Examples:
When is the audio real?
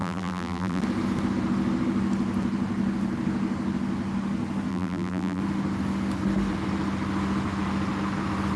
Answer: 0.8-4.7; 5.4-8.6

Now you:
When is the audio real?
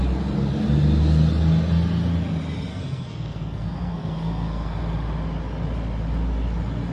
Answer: 0.0-2.7; 4.8-6.9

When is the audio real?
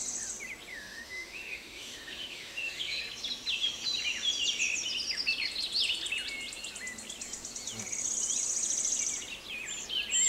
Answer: 0.0-0.7; 3.0-10.3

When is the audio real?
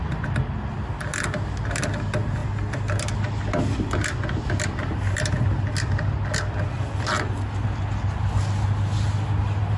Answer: 0.0-9.8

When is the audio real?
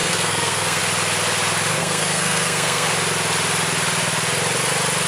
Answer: 0.8-1.7; 2.9-5.1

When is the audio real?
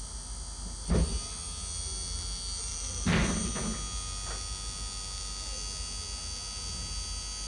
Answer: 0.0-2.7; 3.5-7.5